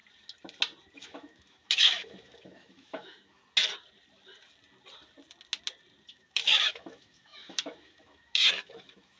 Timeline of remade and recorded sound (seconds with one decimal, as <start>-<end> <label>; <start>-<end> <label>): 0.0-0.9 recorded; 0.9-3.4 remade; 3.4-6.1 recorded; 6.1-9.2 remade